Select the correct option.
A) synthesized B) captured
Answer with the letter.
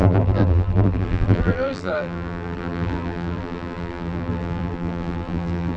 A